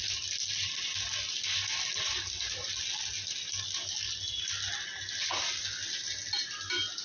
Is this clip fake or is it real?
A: real